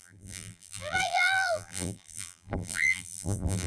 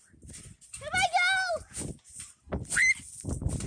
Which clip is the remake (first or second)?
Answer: first